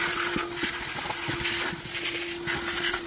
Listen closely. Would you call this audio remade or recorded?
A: recorded